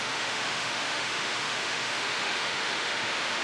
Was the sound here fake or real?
fake